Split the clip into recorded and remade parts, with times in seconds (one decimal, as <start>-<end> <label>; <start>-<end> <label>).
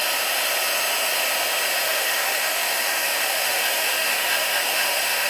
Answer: 0.0-1.9 recorded; 1.9-5.3 remade